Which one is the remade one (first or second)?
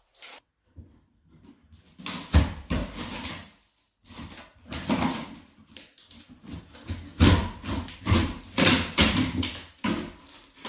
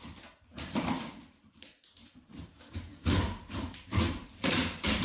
second